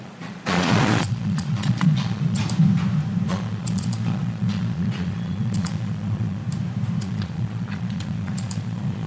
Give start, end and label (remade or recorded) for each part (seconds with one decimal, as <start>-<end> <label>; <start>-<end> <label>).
0.0-2.4 remade; 2.4-3.3 recorded; 3.3-6.4 remade; 6.4-7.0 recorded; 7.0-9.1 remade